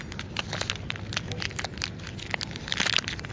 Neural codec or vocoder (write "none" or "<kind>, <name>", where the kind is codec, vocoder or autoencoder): none